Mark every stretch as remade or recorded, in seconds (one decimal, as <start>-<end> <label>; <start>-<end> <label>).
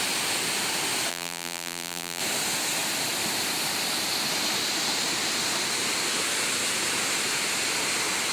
0.0-1.1 recorded; 1.1-2.2 remade; 2.2-8.3 recorded